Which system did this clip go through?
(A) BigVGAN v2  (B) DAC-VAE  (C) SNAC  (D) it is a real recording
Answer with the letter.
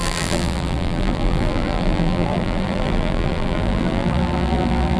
A